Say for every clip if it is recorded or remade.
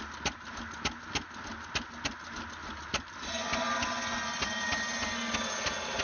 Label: recorded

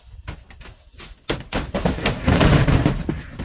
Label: recorded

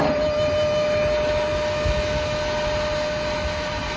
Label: recorded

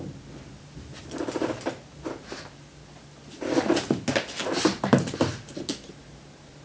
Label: recorded